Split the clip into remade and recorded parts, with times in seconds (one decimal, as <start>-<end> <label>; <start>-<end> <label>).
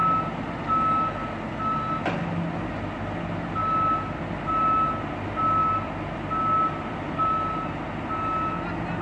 0.0-9.0 recorded